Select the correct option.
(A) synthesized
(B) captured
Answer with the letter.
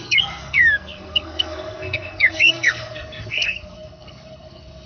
A